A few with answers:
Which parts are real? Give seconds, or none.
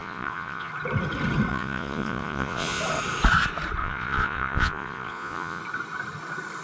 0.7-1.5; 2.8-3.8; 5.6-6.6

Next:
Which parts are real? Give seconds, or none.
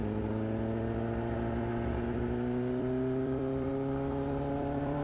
0.0-2.8; 3.7-4.5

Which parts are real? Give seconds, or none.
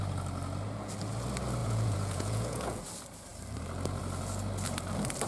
0.0-1.6; 2.8-5.3